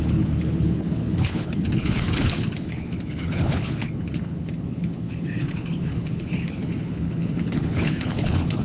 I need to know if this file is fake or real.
fake